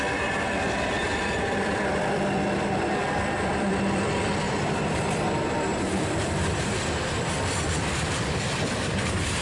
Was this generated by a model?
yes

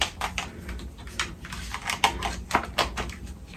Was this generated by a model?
no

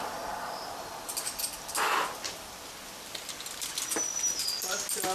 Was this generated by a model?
no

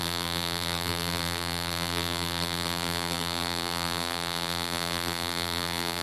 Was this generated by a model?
yes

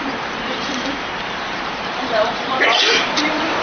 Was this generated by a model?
yes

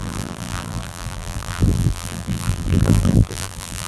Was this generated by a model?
yes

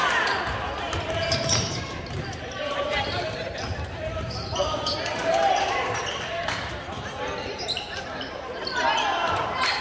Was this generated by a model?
yes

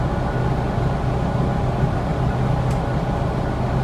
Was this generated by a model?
no